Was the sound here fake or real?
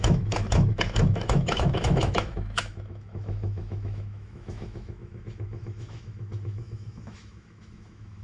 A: fake